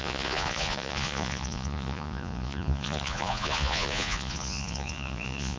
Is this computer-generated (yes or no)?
yes